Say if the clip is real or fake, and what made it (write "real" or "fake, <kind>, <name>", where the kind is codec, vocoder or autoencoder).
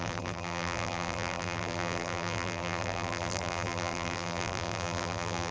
fake, vocoder, BigVGAN v2